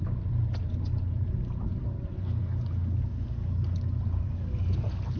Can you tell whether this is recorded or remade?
recorded